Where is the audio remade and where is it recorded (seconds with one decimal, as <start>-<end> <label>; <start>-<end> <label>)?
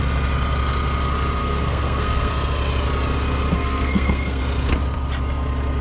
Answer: 0.0-1.4 recorded; 1.4-2.3 remade; 2.3-3.5 recorded; 3.5-4.4 remade; 4.4-5.8 recorded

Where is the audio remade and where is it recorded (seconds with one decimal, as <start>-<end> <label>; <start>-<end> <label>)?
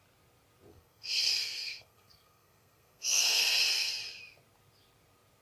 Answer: 0.0-0.7 recorded; 0.7-3.9 remade; 3.9-5.4 recorded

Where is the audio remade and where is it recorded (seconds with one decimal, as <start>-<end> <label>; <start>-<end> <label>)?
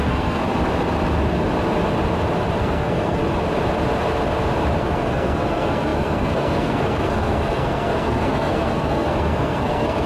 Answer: 0.0-0.4 remade; 0.4-2.6 recorded; 2.6-3.2 remade; 3.2-4.8 recorded; 4.8-10.1 remade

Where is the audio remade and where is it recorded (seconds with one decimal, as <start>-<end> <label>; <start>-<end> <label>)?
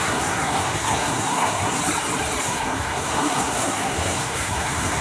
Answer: 0.0-1.8 remade; 1.8-2.4 recorded; 2.4-5.0 remade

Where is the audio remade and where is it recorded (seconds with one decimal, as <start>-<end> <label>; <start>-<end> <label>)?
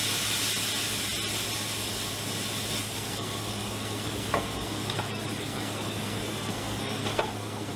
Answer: 0.0-2.8 recorded; 2.8-7.8 remade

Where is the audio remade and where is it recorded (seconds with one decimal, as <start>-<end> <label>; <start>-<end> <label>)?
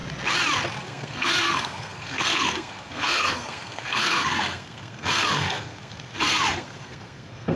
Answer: 0.0-0.8 recorded; 0.8-7.6 remade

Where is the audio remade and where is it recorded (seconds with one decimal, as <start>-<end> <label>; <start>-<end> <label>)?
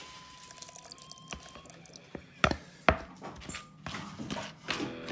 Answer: 0.0-5.1 recorded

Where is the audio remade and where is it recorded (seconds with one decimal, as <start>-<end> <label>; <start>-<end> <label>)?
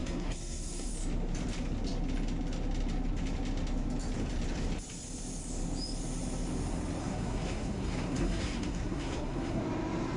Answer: 0.0-0.9 remade; 0.9-7.0 recorded; 7.0-9.6 remade; 9.6-10.2 recorded